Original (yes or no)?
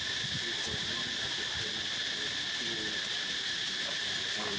yes